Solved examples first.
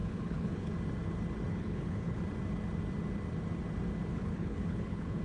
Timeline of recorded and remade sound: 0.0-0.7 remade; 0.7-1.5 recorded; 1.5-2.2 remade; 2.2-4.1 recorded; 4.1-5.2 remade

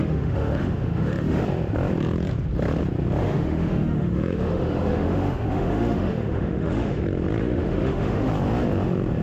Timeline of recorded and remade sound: 0.0-1.4 remade; 1.4-3.2 recorded; 3.2-7.0 remade; 7.0-7.4 recorded; 7.4-8.3 remade; 8.3-9.2 recorded